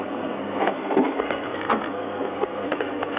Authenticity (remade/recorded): remade